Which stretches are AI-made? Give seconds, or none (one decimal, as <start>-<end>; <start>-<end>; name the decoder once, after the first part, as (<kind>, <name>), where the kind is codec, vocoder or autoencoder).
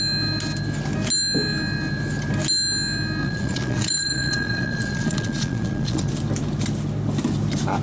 3.2-6.1 (vocoder, Vocos)